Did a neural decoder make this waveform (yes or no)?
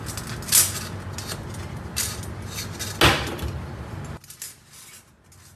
no